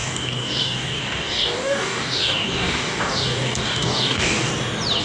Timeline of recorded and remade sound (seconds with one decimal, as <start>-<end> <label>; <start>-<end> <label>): 0.0-4.5 remade; 4.5-5.0 recorded